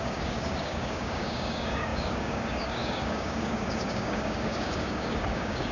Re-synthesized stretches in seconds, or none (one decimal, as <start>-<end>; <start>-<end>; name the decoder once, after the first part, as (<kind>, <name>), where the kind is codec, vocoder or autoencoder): 0.0-5.7 (codec, DAC)